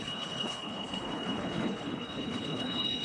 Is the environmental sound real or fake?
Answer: fake